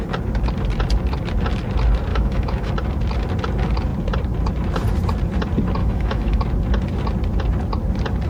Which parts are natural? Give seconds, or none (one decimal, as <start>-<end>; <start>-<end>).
0.0-2.1; 2.7-5.8; 6.4-8.3